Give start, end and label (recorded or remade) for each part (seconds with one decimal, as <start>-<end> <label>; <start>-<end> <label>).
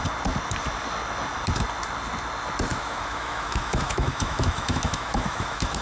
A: 0.0-2.7 recorded; 2.7-5.8 remade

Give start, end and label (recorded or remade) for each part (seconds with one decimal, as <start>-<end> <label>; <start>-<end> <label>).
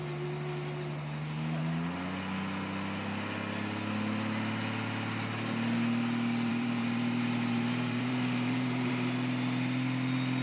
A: 0.0-6.5 recorded; 6.5-8.9 remade; 8.9-10.4 recorded